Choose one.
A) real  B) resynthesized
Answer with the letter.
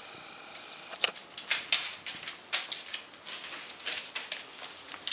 A